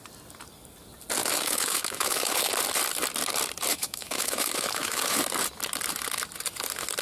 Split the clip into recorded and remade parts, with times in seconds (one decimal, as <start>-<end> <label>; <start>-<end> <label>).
0.0-1.2 recorded; 1.2-2.5 remade; 2.5-3.7 recorded; 3.7-5.2 remade; 5.2-7.0 recorded